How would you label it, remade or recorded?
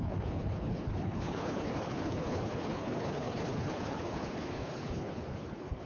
remade